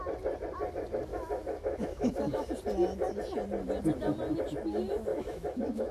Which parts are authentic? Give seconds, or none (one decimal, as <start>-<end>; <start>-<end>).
0.0-1.1; 2.5-5.1